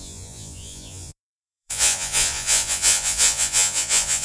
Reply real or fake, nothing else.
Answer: fake